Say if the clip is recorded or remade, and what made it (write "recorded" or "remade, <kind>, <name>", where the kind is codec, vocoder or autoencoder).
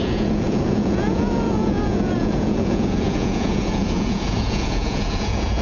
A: remade, vocoder, Vocos